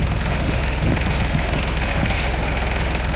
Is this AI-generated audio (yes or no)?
yes